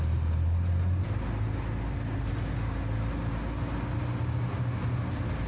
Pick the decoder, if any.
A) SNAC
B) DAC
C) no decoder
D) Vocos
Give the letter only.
C